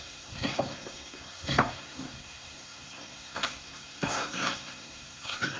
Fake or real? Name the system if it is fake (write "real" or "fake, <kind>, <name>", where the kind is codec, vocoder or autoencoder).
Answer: fake, codec, SNAC